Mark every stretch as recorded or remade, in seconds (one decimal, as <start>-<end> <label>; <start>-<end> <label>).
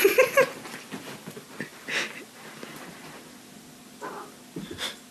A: 0.0-5.1 recorded